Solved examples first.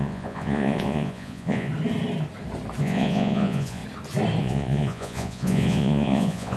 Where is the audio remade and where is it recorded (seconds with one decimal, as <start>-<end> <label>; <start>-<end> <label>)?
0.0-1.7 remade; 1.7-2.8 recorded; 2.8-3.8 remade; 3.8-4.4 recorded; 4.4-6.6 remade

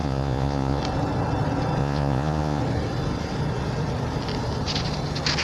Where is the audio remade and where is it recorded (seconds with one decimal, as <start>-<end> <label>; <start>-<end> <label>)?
0.0-0.8 remade; 0.8-1.8 recorded; 1.8-2.6 remade; 2.6-5.4 recorded

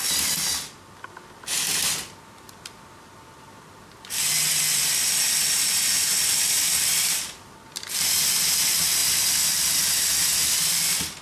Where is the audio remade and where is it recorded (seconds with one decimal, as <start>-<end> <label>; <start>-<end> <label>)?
0.0-11.2 recorded

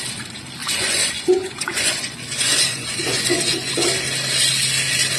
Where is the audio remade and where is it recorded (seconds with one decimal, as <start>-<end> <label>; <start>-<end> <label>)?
0.0-0.6 recorded; 0.6-3.7 remade; 3.7-5.2 recorded

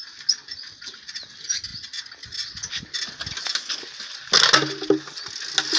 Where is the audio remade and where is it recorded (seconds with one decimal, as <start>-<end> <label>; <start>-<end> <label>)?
0.0-5.8 recorded

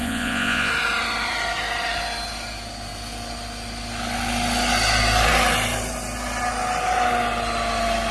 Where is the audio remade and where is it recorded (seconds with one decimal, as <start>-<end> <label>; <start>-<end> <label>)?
0.0-0.7 remade; 0.7-8.1 recorded